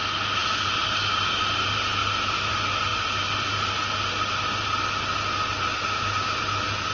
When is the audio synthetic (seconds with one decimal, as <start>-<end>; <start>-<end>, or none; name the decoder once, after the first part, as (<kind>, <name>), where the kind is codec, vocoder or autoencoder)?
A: none